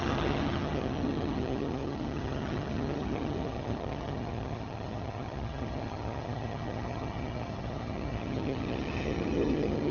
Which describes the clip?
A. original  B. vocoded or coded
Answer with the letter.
B